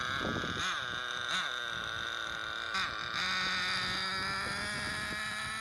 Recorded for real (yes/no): yes